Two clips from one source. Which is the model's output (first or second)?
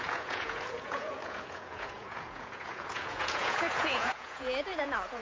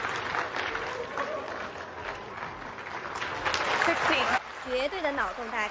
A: first